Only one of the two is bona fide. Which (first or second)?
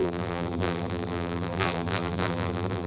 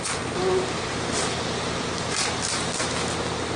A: second